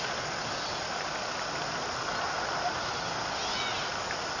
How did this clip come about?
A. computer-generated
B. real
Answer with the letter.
B